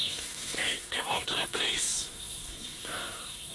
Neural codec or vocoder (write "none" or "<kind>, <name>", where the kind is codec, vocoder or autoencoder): codec, SNAC